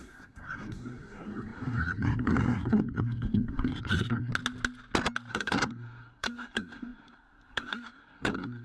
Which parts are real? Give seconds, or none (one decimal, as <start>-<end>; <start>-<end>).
4.3-5.3